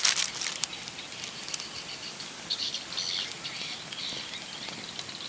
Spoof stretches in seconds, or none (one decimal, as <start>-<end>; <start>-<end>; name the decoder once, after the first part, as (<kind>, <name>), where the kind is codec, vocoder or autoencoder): 2.1-2.7 (codec, DAC)